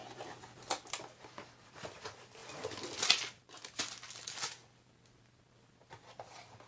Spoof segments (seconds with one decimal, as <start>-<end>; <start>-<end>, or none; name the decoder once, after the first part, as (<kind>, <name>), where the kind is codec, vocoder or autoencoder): none